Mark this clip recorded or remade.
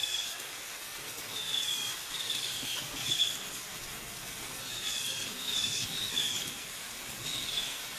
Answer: remade